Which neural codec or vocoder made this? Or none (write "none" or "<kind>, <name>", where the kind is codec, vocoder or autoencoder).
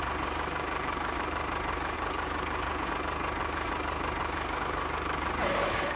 codec, DAC